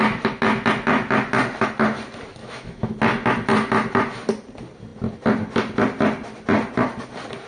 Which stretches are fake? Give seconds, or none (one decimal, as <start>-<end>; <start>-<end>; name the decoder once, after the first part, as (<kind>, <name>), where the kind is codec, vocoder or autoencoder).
2.4-2.9 (autoencoder, DAC-VAE)